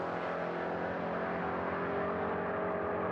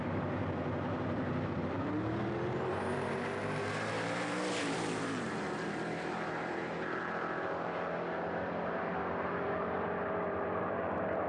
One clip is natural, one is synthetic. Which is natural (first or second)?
first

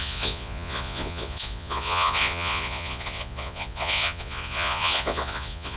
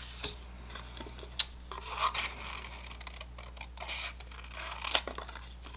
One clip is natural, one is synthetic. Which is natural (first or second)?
second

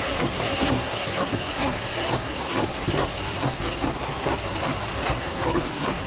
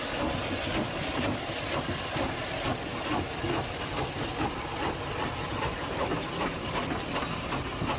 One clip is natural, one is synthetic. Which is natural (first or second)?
second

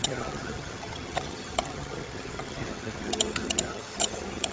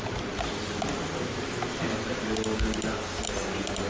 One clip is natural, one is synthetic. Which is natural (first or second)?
second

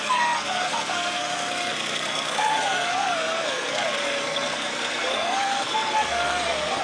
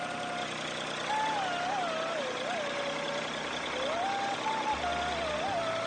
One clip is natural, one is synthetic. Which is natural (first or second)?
second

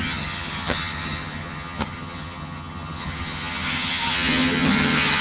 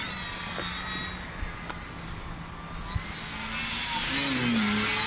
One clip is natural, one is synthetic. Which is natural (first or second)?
second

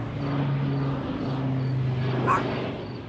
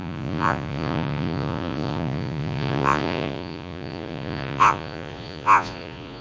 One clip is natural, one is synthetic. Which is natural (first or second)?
first